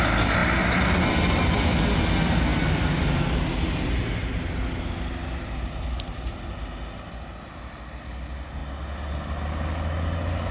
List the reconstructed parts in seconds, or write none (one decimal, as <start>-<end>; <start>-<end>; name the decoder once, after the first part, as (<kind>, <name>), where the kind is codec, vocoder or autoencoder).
none